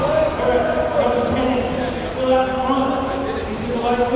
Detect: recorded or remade recorded